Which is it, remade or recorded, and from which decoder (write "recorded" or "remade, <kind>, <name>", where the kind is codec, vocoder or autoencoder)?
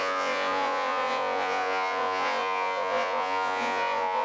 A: remade, vocoder, Vocos